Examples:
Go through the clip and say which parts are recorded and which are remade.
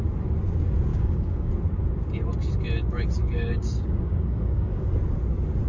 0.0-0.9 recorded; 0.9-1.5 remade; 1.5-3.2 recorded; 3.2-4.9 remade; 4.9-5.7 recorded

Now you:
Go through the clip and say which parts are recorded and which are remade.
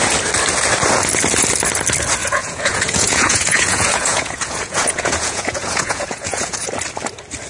0.0-2.2 recorded; 2.2-6.7 remade; 6.7-7.5 recorded